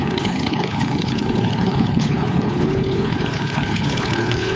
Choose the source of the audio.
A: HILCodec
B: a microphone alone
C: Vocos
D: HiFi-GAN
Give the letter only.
A